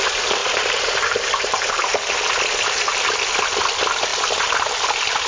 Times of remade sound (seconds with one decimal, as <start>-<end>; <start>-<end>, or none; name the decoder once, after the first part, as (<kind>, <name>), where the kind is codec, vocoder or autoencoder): 0.4-1.7 (vocoder, BigVGAN v2)